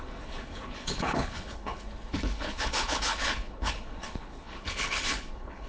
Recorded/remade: remade